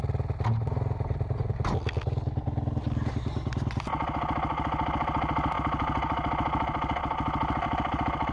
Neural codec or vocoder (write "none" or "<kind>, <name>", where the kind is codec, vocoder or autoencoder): none